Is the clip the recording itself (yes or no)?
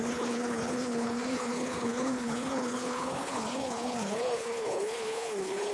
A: no